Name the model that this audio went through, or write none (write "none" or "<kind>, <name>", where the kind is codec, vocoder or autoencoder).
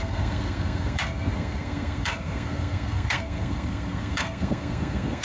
codec, SNAC